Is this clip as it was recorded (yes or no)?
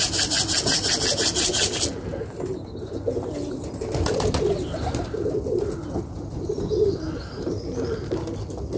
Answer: yes